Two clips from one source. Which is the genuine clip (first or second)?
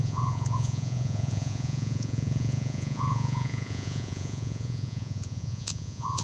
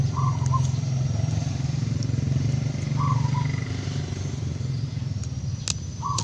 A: second